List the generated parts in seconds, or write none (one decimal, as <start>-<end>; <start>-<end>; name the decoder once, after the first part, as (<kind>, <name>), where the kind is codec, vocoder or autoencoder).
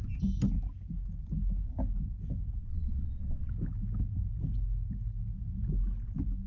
2.6-3.5 (vocoder, WaveNeXt)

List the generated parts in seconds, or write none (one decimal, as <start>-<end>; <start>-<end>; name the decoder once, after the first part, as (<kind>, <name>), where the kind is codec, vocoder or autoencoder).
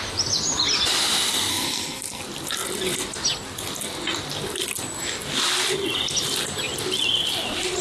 1.5-2.2 (codec, SNAC)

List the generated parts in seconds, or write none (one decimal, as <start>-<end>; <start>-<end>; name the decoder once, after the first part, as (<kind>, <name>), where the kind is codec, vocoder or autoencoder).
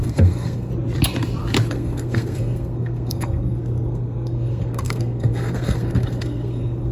0.0-0.7 (codec, SNAC); 1.7-6.9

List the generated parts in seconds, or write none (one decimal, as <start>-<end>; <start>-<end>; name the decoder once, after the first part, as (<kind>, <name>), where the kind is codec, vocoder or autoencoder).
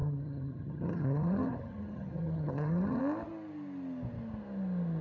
0.0-3.0 (vocoder, HiFi-GAN)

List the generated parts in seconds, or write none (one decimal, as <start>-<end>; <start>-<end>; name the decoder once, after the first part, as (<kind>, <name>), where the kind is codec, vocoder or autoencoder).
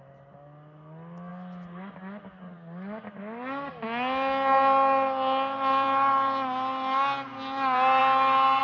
none